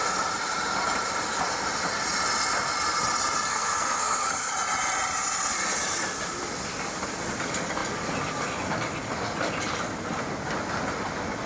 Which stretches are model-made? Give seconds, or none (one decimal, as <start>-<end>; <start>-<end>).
3.5-4.5